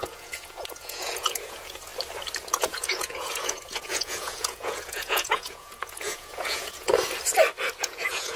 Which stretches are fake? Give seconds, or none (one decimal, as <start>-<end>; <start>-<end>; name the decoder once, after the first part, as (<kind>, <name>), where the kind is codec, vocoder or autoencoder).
0.0-1.9 (vocoder, Vocos); 2.4-6.9; 7.8-8.4